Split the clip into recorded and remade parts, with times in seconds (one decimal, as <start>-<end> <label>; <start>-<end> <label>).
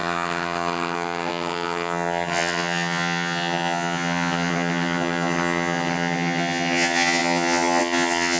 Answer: 0.0-8.4 remade